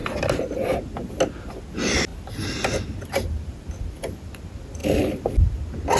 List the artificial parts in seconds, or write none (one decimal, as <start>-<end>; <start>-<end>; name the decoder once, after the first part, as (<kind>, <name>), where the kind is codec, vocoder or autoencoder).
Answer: 2.1-4.1 (vocoder, BigVGAN v2); 4.8-5.3